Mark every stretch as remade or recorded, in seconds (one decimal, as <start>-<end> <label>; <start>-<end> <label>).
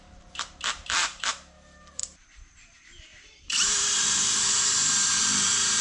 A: 0.0-5.8 remade